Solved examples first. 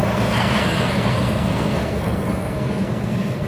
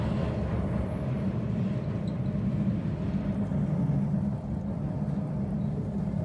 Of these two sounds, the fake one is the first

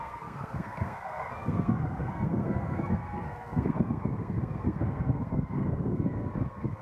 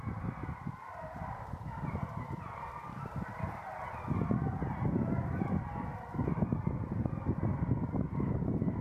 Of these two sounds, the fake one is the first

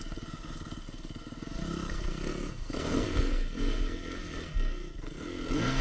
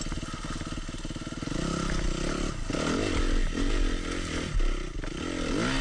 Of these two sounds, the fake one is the first